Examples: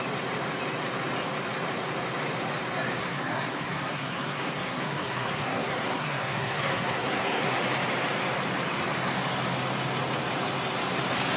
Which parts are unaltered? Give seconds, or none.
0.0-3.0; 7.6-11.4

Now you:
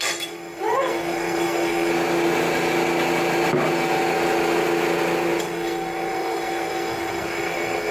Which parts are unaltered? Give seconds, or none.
1.9-5.4

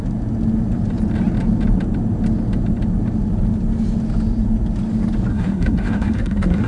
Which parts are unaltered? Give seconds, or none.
0.0-5.3

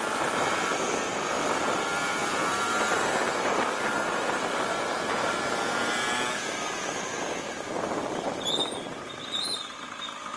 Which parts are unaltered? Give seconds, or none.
0.0-10.4

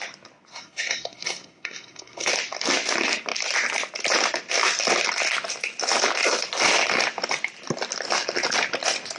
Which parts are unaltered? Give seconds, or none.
0.0-0.5; 2.3-9.2

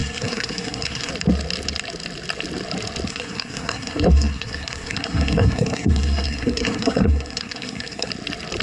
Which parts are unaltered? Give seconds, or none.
1.1-3.1; 8.1-8.6

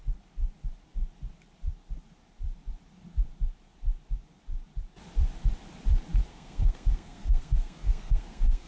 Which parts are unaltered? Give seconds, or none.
0.0-6.3